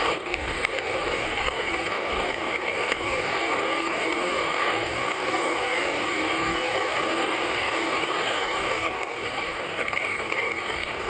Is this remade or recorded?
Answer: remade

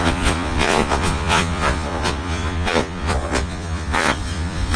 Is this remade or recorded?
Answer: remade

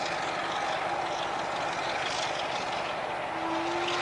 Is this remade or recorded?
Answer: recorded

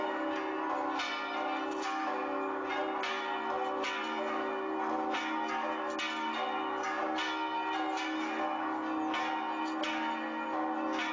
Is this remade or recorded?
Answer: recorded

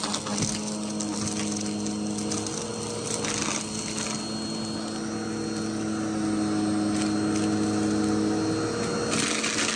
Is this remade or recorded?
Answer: recorded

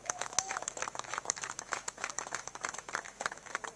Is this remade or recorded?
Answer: remade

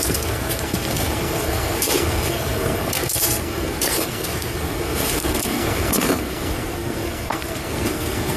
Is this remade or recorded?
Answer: remade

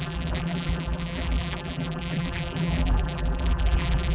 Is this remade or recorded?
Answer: remade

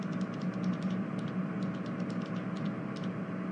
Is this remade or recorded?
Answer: recorded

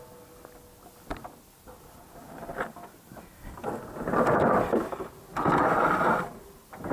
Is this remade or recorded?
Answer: recorded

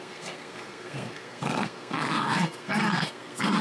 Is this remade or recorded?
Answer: remade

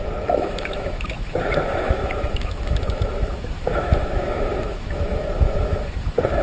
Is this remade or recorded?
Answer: remade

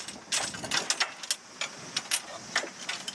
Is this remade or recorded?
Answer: recorded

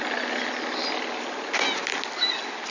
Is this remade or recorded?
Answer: recorded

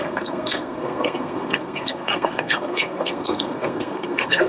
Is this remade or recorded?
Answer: remade